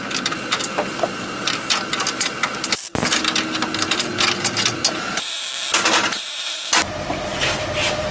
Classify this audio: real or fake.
real